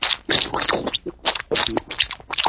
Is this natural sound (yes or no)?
yes